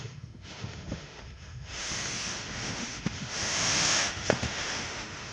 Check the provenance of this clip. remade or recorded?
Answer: remade